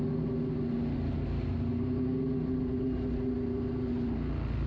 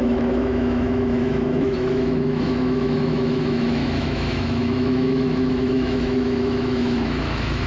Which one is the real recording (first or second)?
first